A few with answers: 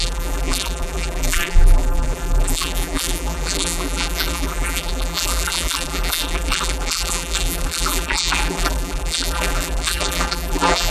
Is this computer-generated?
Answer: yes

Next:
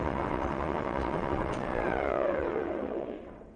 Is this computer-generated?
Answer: yes